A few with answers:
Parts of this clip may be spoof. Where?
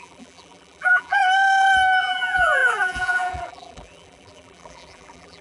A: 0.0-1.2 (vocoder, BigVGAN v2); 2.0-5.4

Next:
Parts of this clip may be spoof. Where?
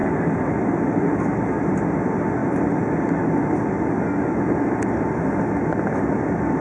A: none